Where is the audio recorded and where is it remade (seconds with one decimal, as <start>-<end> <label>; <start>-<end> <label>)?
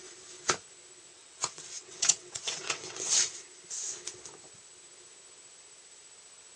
0.0-1.1 recorded; 1.1-3.4 remade; 3.4-6.6 recorded